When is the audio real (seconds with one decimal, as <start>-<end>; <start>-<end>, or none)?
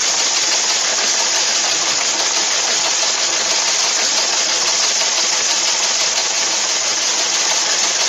0.0-6.2; 7.3-8.1